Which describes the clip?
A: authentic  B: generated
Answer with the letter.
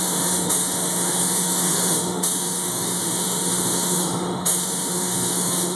B